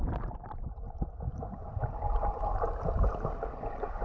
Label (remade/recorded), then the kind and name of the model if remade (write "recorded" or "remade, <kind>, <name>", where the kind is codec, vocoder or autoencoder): recorded